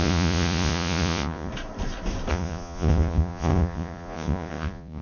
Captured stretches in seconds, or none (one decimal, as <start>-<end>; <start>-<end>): 1.5-2.3